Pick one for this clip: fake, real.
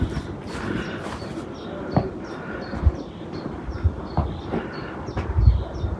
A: real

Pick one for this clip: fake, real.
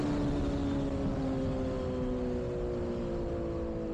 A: real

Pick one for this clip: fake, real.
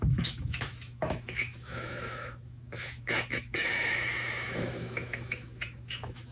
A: fake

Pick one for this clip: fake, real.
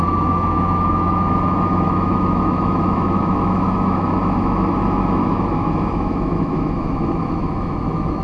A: fake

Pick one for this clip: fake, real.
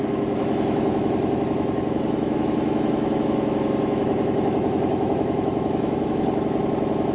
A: fake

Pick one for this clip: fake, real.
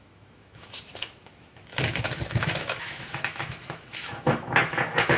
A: fake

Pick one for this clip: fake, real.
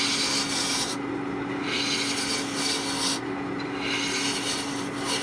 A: real